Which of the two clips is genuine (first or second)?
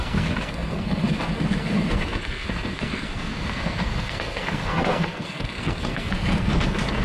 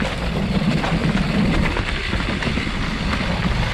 second